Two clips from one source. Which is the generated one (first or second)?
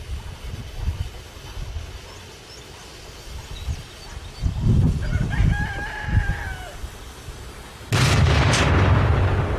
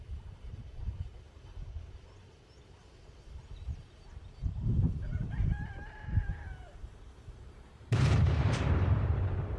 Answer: second